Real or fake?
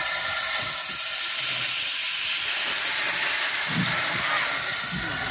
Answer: real